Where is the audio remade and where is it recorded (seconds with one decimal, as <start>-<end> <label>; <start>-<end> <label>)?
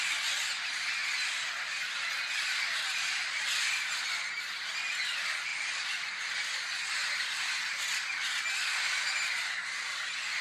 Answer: 0.0-10.4 recorded